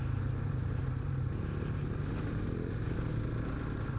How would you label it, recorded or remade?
recorded